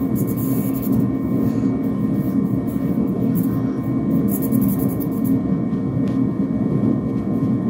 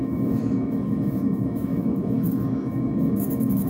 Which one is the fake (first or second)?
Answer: second